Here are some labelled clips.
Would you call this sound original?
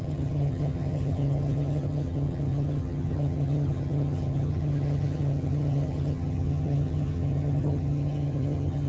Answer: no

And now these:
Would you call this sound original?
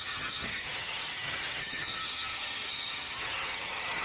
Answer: no